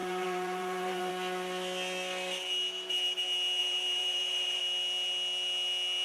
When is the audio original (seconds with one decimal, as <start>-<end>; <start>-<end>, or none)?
1.1-3.6; 4.6-6.0